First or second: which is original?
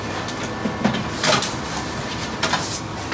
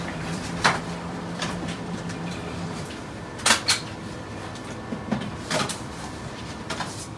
first